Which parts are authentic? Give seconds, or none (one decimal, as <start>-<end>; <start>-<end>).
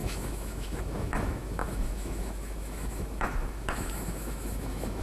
none